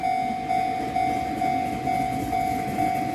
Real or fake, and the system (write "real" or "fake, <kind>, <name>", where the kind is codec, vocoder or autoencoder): real